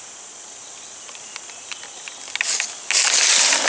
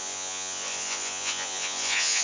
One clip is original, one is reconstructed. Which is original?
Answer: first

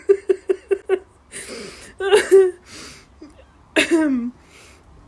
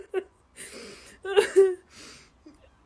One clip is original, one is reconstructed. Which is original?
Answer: first